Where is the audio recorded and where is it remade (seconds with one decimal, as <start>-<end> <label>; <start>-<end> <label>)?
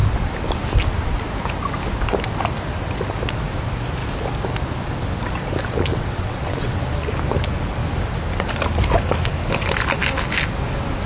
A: 0.0-5.9 recorded; 5.9-6.8 remade; 6.8-11.1 recorded